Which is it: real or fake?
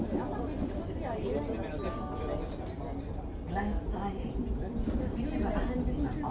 real